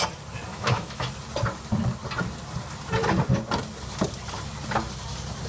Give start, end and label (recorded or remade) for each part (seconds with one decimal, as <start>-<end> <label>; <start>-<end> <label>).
0.0-0.5 recorded; 0.5-1.1 remade; 1.1-5.5 recorded